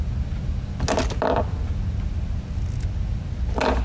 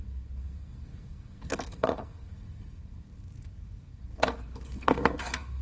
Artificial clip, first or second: second